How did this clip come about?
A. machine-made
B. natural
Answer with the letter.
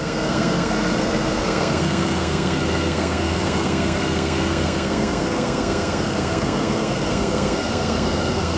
A